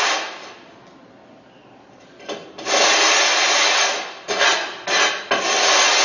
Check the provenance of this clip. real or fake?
real